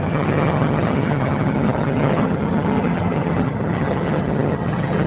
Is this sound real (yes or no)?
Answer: no